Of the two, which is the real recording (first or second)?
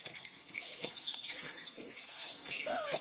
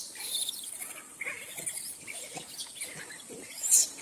second